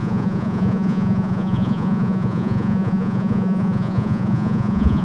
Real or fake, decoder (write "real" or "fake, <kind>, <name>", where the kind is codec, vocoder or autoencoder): fake, vocoder, Vocos